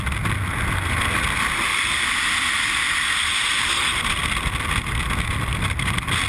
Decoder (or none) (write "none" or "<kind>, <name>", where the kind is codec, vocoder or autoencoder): none